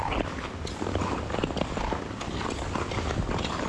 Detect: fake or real real